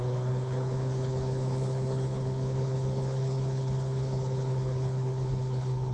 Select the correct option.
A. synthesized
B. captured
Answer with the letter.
A